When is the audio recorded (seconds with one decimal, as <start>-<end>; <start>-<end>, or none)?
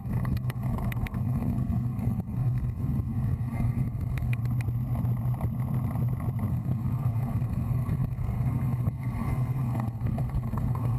4.4-6.5